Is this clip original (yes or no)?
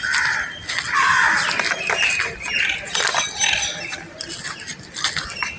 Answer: yes